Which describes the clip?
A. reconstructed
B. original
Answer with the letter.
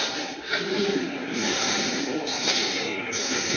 A